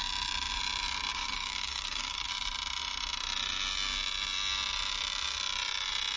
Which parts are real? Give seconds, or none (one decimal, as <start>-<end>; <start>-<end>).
0.0-1.1; 2.3-6.2